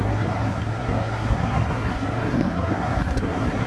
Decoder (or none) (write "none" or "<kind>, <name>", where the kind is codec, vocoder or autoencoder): codec, SNAC